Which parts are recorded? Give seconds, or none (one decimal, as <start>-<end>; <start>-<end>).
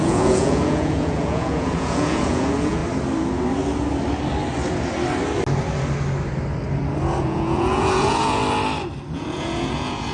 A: 2.8-7.2; 8.4-9.1